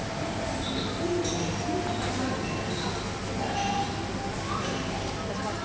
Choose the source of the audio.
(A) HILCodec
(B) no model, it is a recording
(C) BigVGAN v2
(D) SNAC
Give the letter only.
B